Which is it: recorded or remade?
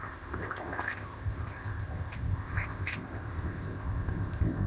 remade